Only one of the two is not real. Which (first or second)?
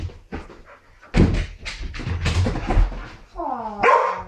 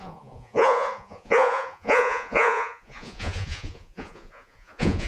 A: second